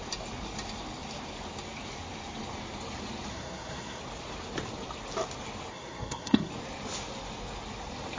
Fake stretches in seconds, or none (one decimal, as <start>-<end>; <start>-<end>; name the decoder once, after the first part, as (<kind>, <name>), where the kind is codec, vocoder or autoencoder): 3.3-4.0 (codec, SNAC); 5.7-6.5